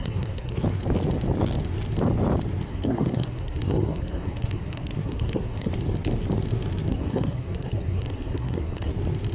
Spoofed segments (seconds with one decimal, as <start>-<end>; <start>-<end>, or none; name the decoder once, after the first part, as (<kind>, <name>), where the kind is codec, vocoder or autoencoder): 0.0-0.6 (codec, SNAC); 2.7-5.7; 6.9-8.9